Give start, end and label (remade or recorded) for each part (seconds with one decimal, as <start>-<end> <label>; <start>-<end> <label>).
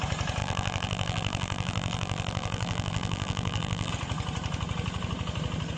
0.0-0.4 recorded; 0.4-3.9 remade; 3.9-5.8 recorded